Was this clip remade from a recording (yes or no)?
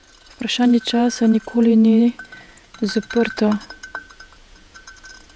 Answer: yes